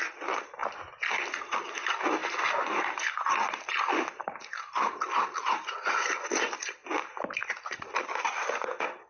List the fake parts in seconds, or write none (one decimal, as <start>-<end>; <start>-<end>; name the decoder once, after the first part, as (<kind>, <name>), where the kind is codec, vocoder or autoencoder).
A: none